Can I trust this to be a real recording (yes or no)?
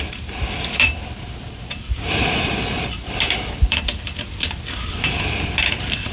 no